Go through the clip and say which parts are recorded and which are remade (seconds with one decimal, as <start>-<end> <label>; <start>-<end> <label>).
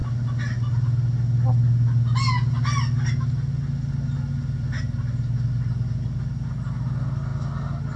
0.0-8.0 recorded